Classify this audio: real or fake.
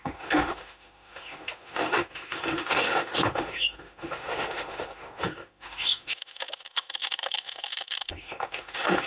fake